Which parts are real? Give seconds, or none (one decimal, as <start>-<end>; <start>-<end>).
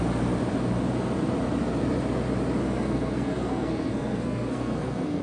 0.0-2.6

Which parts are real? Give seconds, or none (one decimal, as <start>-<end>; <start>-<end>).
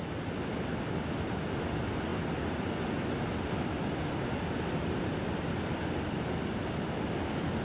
0.0-7.6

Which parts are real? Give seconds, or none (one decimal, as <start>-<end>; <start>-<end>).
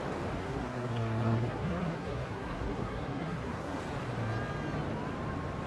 0.0-0.4; 3.8-5.7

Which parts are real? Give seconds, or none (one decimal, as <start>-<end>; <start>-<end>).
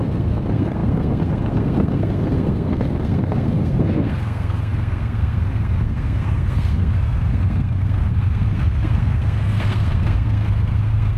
none